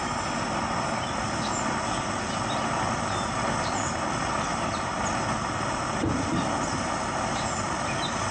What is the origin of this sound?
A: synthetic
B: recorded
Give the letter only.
B